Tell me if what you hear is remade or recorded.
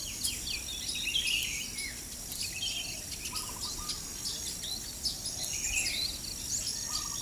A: recorded